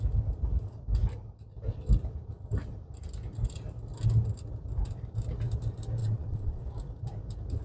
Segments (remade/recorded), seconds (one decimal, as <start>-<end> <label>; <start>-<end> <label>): 0.0-6.0 recorded; 6.0-6.6 remade; 6.6-7.6 recorded